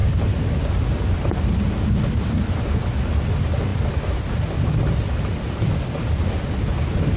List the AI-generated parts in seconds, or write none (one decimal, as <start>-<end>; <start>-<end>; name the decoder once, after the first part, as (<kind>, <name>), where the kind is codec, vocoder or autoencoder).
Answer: none